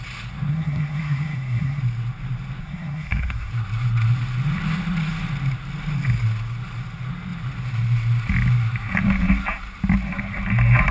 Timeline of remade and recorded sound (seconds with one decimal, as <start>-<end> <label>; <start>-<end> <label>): 0.0-0.5 recorded; 0.5-1.8 remade; 1.8-2.6 recorded; 2.6-3.5 remade; 3.5-10.9 recorded